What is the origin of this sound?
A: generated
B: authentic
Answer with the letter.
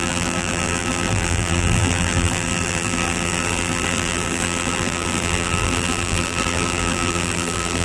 A